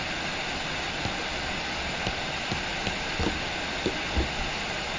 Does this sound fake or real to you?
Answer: real